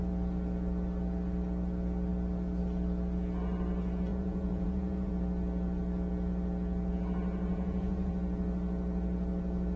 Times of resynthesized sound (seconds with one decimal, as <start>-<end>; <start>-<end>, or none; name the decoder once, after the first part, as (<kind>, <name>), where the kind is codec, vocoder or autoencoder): 4.1-5.1 (vocoder, Vocos); 7.5-8.1